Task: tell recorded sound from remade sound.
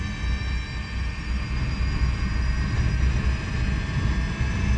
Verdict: recorded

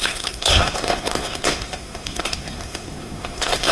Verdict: remade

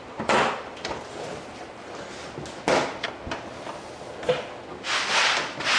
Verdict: recorded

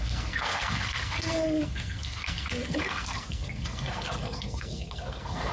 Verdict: remade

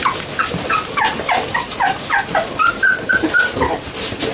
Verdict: recorded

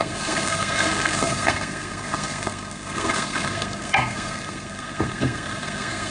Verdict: remade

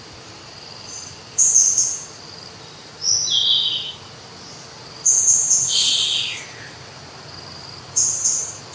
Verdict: recorded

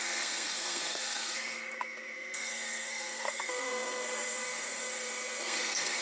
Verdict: remade